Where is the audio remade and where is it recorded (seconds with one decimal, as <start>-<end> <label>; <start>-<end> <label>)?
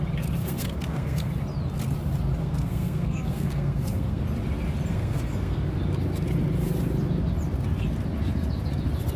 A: 0.0-0.4 recorded; 0.4-1.3 remade; 1.3-2.4 recorded; 2.4-4.2 remade; 4.2-4.9 recorded; 4.9-5.6 remade; 5.6-9.2 recorded